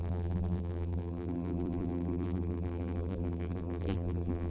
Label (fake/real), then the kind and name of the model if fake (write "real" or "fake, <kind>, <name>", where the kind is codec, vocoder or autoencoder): fake, vocoder, BigVGAN v2